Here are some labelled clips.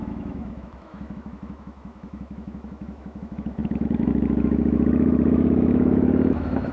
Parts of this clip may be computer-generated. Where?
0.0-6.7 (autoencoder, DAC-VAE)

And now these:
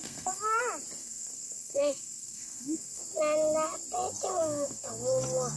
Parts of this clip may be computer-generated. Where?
0.0-0.6 (codec, SNAC); 1.0-3.0; 4.3-4.9

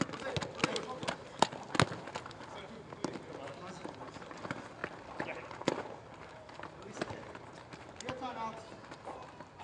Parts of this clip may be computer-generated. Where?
none

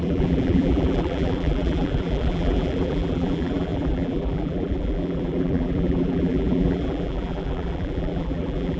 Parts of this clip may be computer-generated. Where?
0.0-8.8 (vocoder, BigVGAN v2)

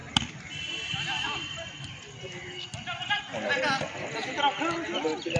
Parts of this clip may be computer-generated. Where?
none

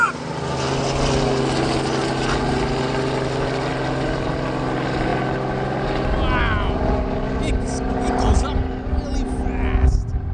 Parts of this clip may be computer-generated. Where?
none

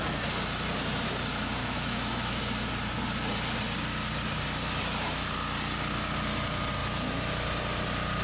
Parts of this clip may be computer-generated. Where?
1.6-2.4 (autoencoder, DAC-VAE)